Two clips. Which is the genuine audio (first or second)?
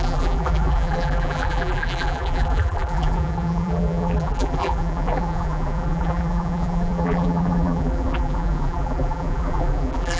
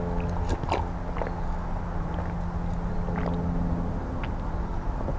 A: second